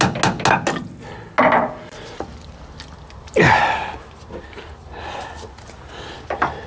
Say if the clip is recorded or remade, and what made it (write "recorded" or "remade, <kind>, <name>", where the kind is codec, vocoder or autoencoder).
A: recorded